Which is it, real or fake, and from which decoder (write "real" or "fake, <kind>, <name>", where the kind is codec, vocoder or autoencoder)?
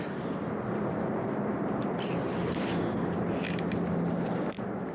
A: real